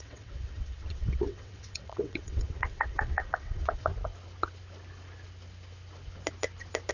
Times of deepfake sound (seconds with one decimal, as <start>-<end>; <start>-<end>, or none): 0.0-3.9